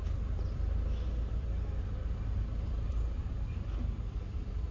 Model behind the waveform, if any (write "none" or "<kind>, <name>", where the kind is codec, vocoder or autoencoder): vocoder, BigVGAN v2